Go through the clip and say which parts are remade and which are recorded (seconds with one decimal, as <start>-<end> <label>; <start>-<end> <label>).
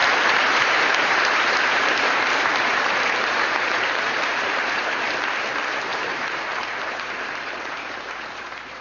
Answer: 0.0-5.0 remade; 5.0-5.9 recorded; 5.9-8.8 remade